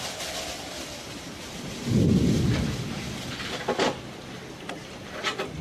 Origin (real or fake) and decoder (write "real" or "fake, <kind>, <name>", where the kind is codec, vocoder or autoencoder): real